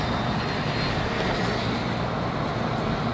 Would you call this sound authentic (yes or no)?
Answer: yes